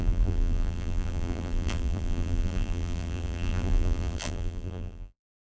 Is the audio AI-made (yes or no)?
yes